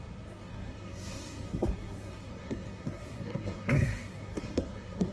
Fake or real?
fake